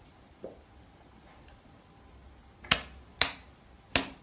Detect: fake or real real